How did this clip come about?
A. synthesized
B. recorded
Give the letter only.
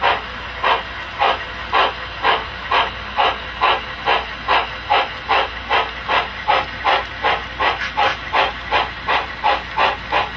B